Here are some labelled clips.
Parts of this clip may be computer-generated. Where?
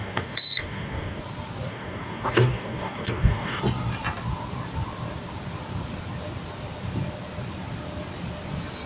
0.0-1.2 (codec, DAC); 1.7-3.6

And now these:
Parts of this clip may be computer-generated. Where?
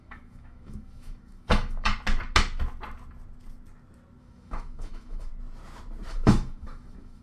0.0-1.9 (autoencoder, DAC-VAE); 4.2-5.3; 6.1-7.2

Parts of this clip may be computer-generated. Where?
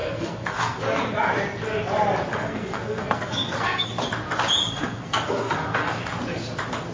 0.0-0.8 (codec, SNAC); 2.3-3.9; 4.6-6.0